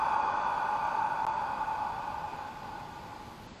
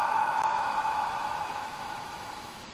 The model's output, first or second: second